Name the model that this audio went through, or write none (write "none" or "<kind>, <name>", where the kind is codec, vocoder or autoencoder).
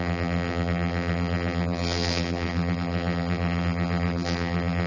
vocoder, BigVGAN v2